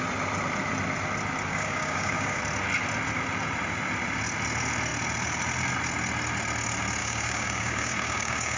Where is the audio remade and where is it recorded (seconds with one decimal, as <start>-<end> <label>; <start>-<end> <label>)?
0.0-1.5 recorded; 1.5-2.4 remade; 2.4-7.0 recorded; 7.0-8.6 remade